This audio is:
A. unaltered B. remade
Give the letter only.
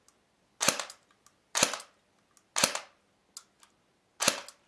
A